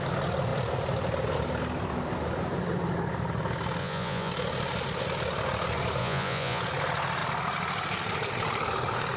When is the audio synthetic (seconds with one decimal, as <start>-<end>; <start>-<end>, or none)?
3.8-4.3; 6.0-6.6